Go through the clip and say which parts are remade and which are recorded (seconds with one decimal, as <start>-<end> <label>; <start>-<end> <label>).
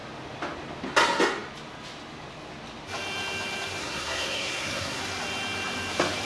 0.0-3.8 recorded; 3.8-5.0 remade; 5.0-6.3 recorded